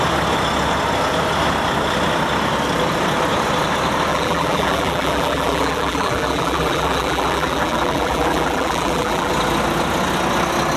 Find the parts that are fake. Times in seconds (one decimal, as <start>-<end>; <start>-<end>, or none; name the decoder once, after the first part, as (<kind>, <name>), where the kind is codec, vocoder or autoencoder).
4.1-9.3 (vocoder, BigVGAN v2)